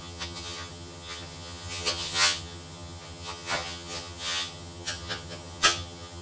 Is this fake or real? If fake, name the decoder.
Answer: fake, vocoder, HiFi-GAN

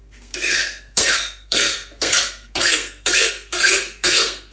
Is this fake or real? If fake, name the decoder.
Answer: fake, codec, SNAC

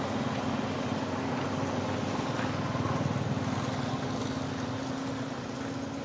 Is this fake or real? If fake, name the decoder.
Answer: real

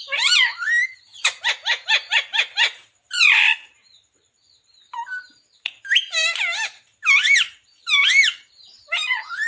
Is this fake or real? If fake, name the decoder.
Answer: fake, vocoder, BigVGAN v2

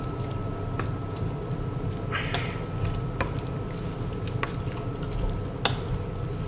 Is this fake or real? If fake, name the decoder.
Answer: real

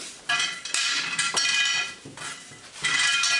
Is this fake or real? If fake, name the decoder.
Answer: real